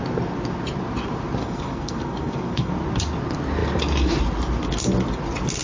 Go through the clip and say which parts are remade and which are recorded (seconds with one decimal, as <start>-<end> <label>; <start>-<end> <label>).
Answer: 0.0-1.4 recorded; 1.4-2.7 remade; 2.7-5.6 recorded